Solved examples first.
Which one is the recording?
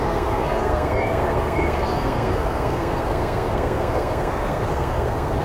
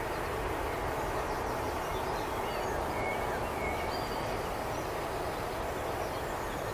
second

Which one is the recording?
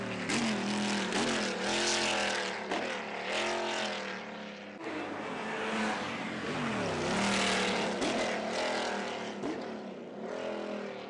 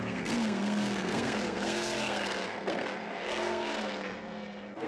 first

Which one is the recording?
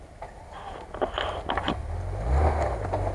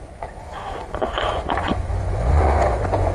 first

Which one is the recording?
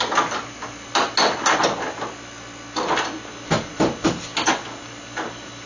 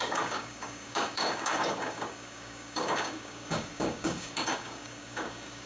first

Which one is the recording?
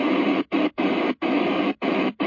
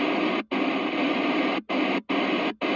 second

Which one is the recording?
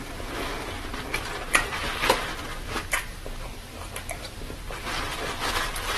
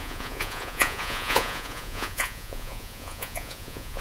first